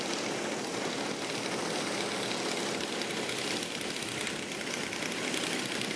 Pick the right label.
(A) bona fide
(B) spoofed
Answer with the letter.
A